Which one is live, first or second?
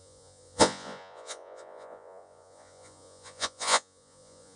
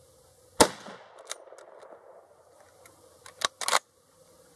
second